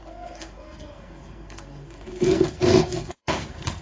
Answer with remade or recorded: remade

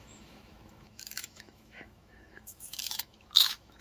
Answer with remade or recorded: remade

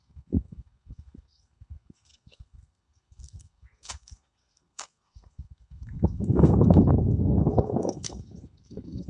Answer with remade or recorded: remade